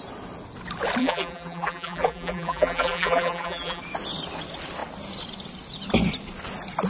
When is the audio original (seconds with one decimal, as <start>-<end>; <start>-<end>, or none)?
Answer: 0.0-1.0; 3.8-6.9